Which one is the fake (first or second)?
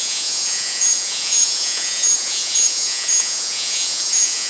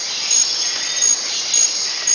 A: first